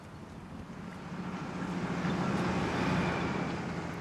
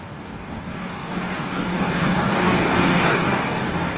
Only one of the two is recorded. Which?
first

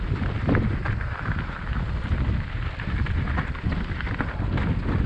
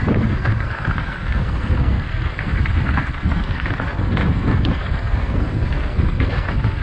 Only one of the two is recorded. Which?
first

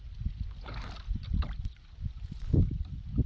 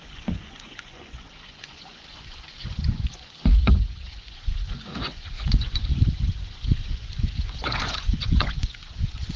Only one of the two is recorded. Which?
first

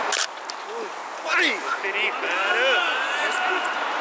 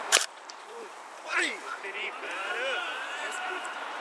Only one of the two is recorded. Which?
first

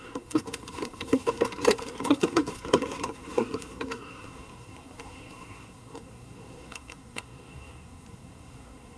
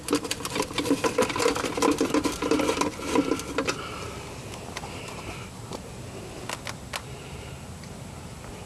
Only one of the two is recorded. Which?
second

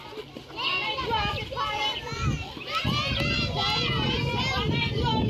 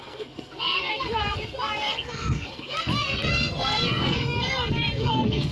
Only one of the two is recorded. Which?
first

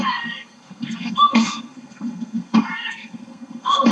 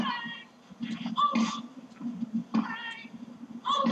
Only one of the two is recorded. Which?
second